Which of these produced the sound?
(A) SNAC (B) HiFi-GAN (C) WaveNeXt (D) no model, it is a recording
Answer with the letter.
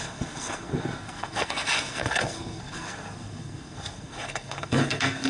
A